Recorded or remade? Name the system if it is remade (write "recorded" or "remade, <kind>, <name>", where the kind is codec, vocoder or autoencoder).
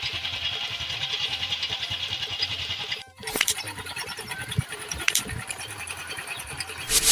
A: remade, vocoder, BigVGAN v2